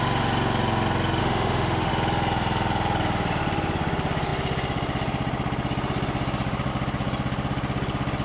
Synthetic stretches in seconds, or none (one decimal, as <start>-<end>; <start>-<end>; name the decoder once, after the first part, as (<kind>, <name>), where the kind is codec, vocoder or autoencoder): 1.2-1.9 (autoencoder, DAC-VAE)